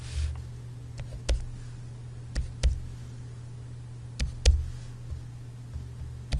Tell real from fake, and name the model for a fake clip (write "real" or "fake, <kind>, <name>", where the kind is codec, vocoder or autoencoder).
real